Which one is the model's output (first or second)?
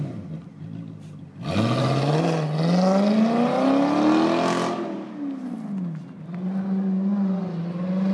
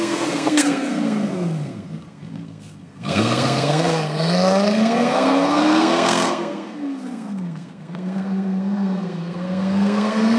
second